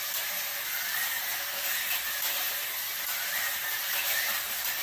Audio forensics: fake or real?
real